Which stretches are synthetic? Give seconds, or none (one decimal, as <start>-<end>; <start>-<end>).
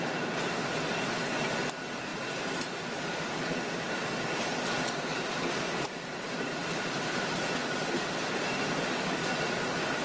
2.1-5.9